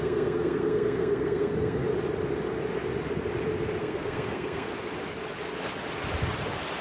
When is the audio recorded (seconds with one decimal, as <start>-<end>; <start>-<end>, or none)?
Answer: 1.8-3.8; 4.7-6.8